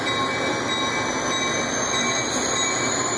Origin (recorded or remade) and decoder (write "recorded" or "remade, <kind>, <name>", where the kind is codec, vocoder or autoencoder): recorded